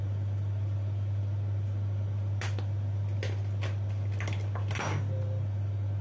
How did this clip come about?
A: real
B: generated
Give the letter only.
A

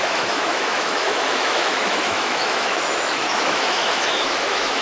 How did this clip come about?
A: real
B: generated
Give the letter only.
B